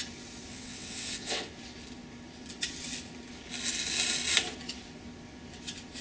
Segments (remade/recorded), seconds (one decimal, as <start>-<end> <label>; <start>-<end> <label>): 0.0-0.5 recorded; 0.5-1.5 remade; 1.5-6.0 recorded

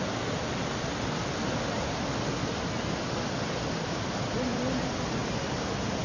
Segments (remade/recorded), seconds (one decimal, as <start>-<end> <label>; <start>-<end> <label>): 0.0-6.0 recorded

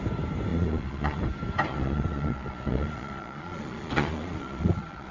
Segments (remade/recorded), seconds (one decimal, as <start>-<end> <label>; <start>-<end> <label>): 0.0-0.5 recorded; 0.5-1.2 remade; 1.2-1.7 recorded; 1.7-5.1 remade

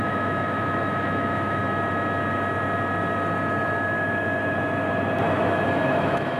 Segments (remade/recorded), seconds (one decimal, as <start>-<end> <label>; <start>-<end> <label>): 0.0-1.6 remade; 1.6-5.4 recorded; 5.4-6.4 remade